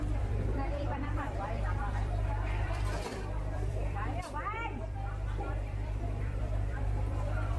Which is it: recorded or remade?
remade